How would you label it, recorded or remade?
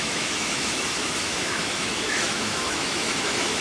remade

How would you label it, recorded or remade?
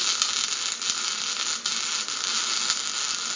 recorded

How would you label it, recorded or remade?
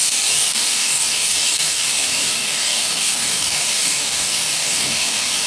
remade